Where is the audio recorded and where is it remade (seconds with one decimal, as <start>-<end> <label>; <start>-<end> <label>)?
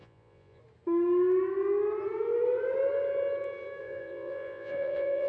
0.0-0.6 remade; 0.6-3.8 recorded; 3.8-5.3 remade